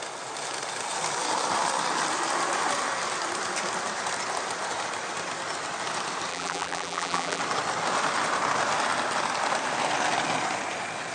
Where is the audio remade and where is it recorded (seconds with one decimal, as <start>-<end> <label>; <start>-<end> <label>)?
0.0-6.3 recorded; 6.3-7.4 remade; 7.4-11.1 recorded